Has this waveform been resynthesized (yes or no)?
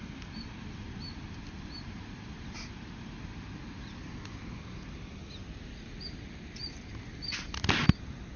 no